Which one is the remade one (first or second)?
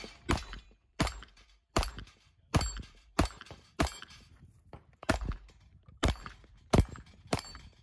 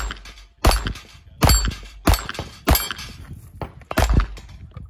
first